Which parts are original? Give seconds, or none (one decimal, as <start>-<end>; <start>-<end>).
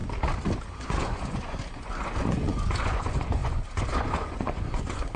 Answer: 0.0-0.7